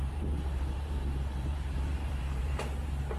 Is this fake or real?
fake